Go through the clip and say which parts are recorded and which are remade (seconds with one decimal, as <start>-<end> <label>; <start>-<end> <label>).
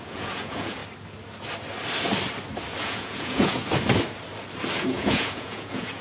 0.0-0.8 remade; 0.8-2.8 recorded; 2.8-3.6 remade; 3.6-4.8 recorded; 4.8-6.0 remade